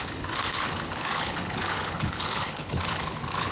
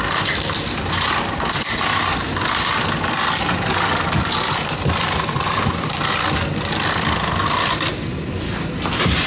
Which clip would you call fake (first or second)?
first